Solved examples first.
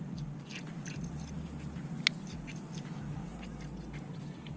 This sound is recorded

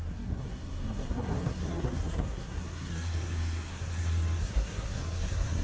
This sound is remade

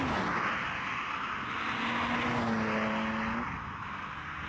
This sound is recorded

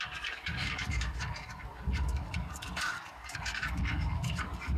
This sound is remade